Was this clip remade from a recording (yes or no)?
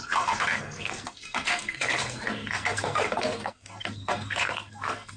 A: yes